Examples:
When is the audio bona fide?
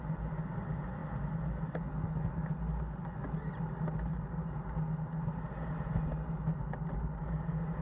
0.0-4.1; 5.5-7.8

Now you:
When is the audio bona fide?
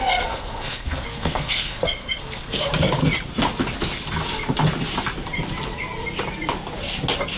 2.7-7.4